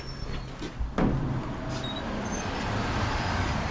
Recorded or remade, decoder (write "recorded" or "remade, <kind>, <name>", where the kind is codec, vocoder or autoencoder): remade, vocoder, BigVGAN v2